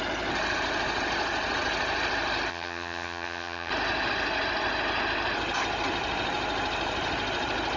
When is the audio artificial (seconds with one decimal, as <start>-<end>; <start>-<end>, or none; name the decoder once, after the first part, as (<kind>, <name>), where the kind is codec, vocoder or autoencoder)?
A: 2.5-3.7 (vocoder, HiFi-GAN)